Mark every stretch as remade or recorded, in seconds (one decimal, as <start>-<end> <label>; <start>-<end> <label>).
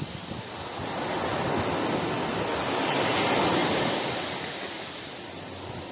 0.0-5.9 recorded